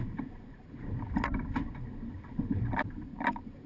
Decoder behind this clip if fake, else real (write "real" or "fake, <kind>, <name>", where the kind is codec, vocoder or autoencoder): fake, vocoder, BigVGAN v2